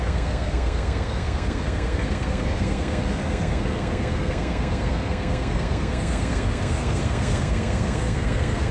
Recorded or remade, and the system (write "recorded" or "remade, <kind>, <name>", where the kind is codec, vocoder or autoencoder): remade, codec, SNAC